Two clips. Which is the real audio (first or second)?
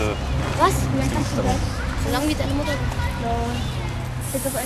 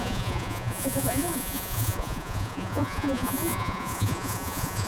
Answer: first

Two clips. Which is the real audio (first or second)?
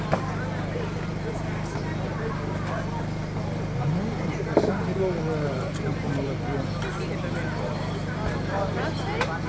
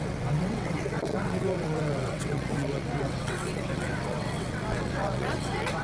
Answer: first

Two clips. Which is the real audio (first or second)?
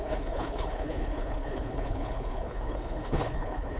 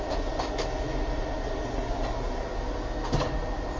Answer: second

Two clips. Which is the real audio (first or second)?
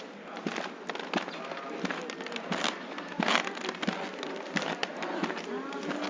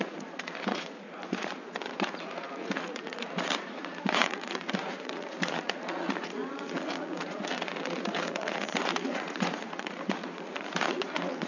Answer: first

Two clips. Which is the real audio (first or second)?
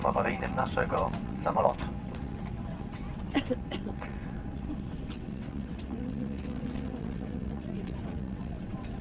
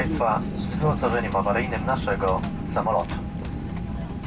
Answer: second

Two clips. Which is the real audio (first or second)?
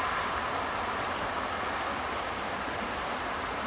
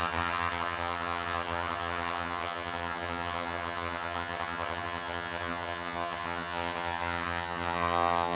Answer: first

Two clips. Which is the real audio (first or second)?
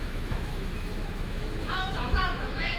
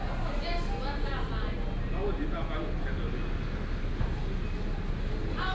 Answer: second